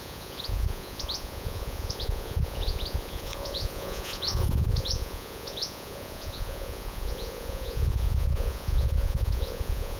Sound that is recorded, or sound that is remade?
remade